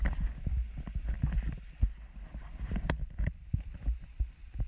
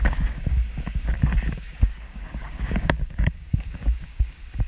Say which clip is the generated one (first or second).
second